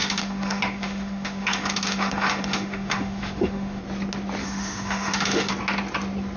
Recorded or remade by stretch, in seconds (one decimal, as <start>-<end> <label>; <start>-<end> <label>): 0.0-3.8 remade; 3.8-4.4 recorded; 4.4-5.5 remade; 5.5-6.4 recorded